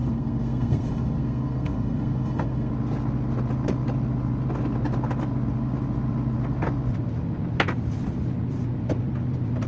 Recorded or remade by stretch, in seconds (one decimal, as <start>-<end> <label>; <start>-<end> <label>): 0.0-2.7 remade; 2.7-9.7 recorded